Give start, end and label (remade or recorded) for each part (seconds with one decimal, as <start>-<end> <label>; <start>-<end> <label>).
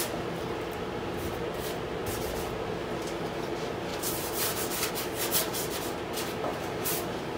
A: 0.0-3.9 recorded; 3.9-4.9 remade; 4.9-6.5 recorded; 6.5-7.4 remade